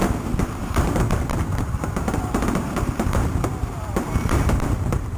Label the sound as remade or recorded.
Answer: remade